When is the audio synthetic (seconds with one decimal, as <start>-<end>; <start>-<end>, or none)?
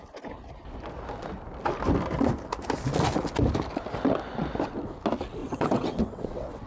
5.4-6.7